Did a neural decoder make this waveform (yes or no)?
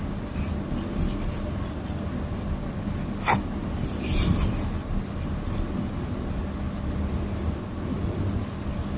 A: no